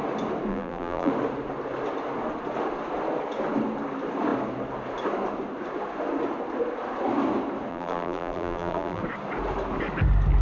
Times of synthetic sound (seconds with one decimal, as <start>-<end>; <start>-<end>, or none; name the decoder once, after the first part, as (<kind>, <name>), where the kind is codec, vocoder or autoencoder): 0.5-1.1 (vocoder, BigVGAN v2); 7.7-9.0